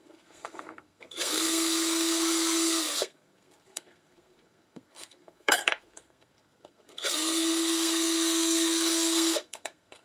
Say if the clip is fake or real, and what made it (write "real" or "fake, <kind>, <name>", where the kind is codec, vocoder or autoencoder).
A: fake, codec, SNAC